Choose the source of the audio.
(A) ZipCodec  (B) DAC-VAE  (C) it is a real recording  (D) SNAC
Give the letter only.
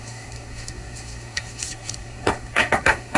D